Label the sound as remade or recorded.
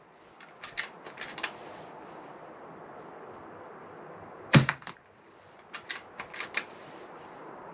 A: remade